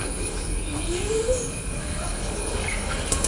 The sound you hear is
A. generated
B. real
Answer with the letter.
A